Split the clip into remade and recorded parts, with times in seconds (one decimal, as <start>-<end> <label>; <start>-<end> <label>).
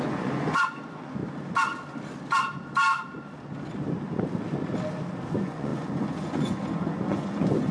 0.0-1.2 remade; 1.2-5.3 recorded; 5.3-7.7 remade